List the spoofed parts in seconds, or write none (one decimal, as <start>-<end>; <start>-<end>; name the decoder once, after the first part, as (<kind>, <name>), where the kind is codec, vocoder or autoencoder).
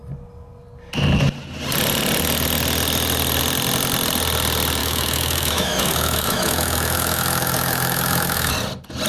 4.8-8.5 (autoencoder, DAC-VAE)